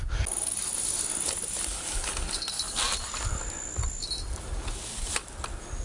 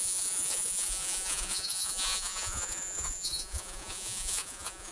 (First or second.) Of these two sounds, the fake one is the second